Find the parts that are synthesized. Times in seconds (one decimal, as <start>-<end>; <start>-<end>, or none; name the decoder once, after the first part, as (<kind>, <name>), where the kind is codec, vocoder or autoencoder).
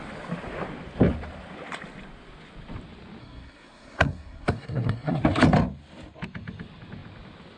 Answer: 3.2-5.2 (codec, SNAC)